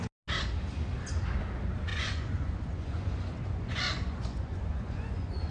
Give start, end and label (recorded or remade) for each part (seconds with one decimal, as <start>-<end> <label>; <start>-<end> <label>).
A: 0.0-1.9 recorded; 1.9-5.5 remade